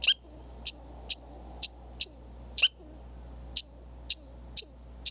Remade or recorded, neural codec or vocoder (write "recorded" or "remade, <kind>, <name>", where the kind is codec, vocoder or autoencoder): recorded